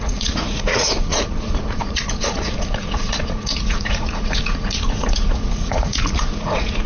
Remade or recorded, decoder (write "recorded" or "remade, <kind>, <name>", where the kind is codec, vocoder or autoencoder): remade, vocoder, Vocos